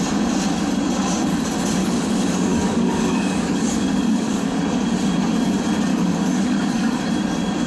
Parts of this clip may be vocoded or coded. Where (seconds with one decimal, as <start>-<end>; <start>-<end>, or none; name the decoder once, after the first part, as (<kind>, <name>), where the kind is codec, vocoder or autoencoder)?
1.8-4.6 (codec, DAC); 5.9-7.0